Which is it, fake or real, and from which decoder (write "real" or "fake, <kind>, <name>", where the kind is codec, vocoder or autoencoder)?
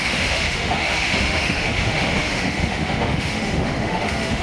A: fake, autoencoder, DAC-VAE